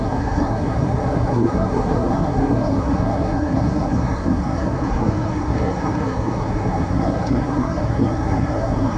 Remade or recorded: remade